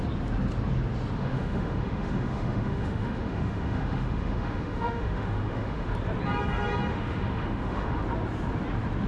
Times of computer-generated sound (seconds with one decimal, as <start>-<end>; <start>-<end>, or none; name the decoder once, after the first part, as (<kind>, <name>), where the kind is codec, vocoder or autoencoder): 1.2-5.9 (autoencoder, DAC-VAE); 6.9-8.0